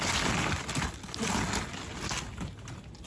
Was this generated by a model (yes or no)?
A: no